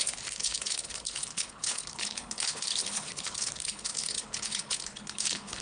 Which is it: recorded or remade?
remade